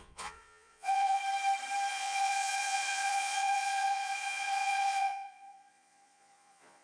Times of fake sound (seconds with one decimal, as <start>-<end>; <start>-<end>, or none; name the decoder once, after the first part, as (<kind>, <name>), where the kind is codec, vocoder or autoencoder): 0.0-1.2 (vocoder, Vocos); 1.9-6.8